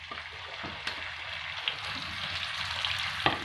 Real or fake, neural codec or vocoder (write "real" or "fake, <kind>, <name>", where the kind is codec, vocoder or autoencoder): real